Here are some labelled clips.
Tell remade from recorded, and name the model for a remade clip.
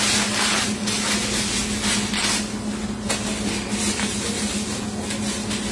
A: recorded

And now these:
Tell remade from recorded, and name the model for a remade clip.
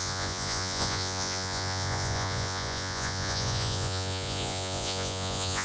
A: remade, vocoder, Vocos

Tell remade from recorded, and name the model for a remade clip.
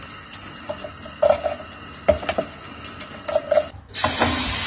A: recorded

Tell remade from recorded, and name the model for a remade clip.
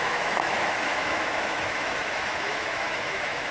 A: remade, autoencoder, DAC-VAE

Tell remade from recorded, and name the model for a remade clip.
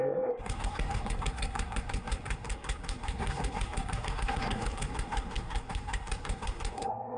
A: remade, codec, SNAC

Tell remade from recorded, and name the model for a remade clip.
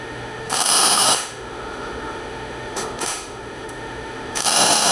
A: remade, autoencoder, DAC-VAE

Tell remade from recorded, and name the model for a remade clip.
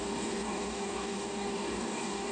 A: remade, codec, DAC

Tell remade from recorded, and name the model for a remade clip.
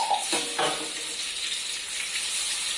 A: recorded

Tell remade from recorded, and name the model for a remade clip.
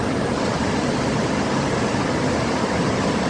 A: recorded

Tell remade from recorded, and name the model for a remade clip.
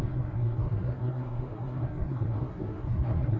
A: remade, codec, SNAC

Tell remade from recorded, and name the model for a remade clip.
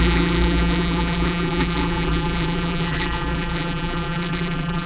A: remade, vocoder, BigVGAN v2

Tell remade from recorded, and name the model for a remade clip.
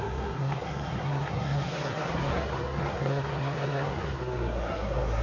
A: remade, codec, SNAC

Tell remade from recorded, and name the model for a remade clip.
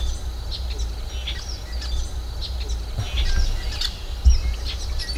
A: recorded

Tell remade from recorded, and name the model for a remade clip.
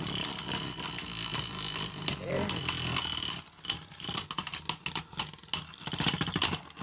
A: recorded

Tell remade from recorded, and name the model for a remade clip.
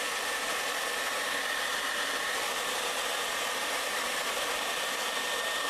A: remade, vocoder, BigVGAN v2